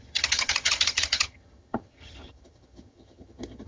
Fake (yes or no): yes